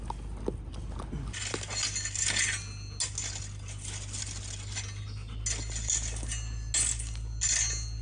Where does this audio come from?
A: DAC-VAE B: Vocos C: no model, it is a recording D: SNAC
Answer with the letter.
C